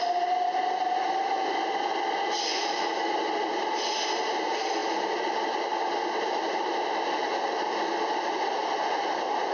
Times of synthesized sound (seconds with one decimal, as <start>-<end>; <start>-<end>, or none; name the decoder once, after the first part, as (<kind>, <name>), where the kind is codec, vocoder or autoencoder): 2.5-3.1 (autoencoder, DAC-VAE)